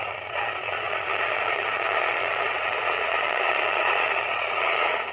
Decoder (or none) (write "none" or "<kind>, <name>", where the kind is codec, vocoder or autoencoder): vocoder, Vocos